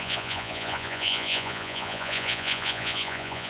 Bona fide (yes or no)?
no